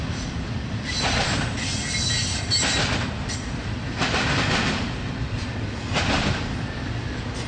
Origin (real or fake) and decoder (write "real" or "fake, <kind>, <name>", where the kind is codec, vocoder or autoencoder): fake, vocoder, BigVGAN v2